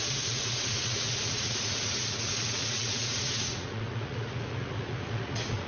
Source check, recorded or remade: remade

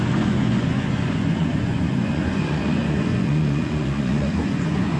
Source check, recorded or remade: remade